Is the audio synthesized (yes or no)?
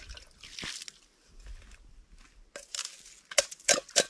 no